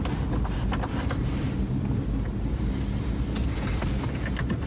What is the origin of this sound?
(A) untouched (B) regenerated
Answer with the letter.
A